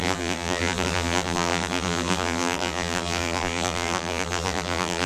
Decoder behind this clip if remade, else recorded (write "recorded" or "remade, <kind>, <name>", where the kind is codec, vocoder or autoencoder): remade, vocoder, BigVGAN v2